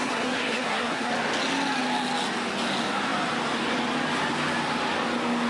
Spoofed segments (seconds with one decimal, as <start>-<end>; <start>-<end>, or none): 0.0-1.1